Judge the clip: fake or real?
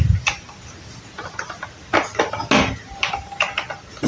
real